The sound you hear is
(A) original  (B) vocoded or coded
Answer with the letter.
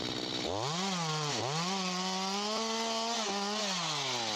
A